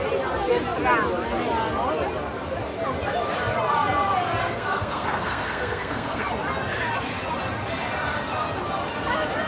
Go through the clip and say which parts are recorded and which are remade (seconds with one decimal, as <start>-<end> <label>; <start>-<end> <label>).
0.0-4.4 recorded; 4.4-6.3 remade; 6.3-9.5 recorded